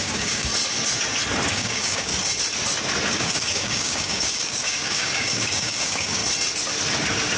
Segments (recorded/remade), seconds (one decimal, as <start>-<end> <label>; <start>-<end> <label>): 0.0-0.5 remade; 0.5-1.5 recorded; 1.5-2.1 remade; 2.1-3.1 recorded; 3.1-6.2 remade; 6.2-7.4 recorded